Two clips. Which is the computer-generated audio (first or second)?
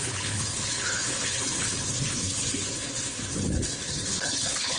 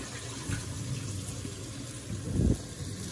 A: first